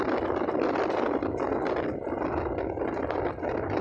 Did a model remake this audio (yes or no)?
no